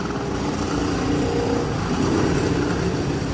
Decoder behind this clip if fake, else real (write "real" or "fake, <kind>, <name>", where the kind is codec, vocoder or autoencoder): real